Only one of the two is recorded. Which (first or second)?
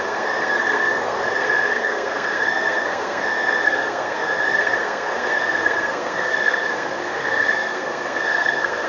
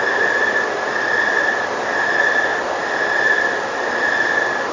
second